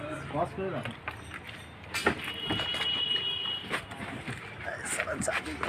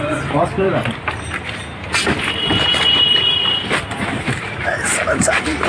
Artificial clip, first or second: second